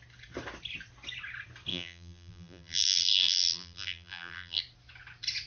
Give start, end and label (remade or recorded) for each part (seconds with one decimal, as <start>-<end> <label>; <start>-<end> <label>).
0.0-1.7 recorded; 1.7-4.6 remade; 4.6-5.5 recorded